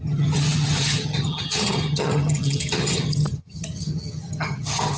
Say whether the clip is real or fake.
fake